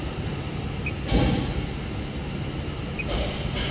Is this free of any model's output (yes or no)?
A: yes